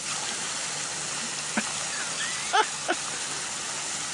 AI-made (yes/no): no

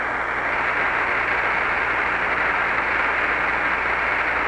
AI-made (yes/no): no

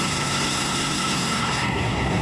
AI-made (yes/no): yes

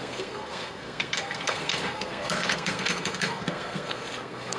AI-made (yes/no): yes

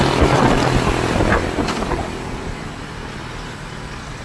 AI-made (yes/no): no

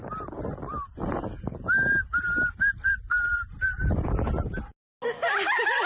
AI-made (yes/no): no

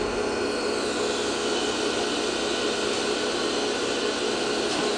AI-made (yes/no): no